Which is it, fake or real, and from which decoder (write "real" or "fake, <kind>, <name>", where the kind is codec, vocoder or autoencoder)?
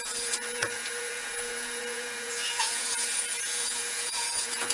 fake, vocoder, Vocos